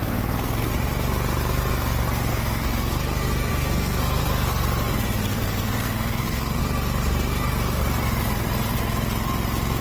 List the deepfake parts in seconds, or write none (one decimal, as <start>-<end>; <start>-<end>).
0.0-0.7; 2.3-2.9; 3.5-4.2; 5.3-6.6